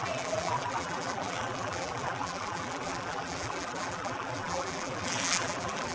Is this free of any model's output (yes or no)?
no